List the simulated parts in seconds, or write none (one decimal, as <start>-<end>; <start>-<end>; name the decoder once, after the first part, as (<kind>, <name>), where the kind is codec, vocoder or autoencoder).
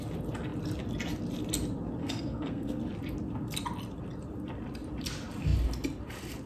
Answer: 2.0-2.8 (codec, SNAC)